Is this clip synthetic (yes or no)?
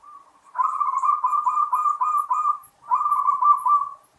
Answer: yes